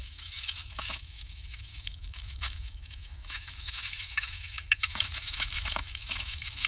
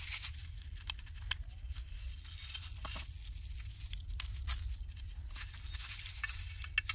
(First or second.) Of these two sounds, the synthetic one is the first